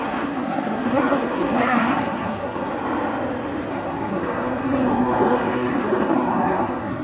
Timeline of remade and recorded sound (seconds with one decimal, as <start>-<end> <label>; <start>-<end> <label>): 0.0-2.7 remade; 2.7-3.7 recorded; 3.7-7.0 remade